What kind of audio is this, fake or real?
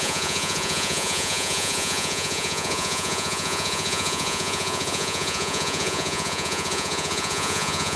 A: fake